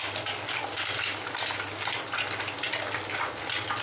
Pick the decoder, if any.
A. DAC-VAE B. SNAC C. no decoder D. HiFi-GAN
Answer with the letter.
C